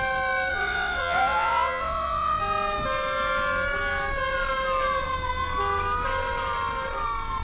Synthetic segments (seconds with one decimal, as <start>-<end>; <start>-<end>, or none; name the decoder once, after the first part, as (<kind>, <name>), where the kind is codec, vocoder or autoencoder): 0.5-2.4 (vocoder, WaveNeXt)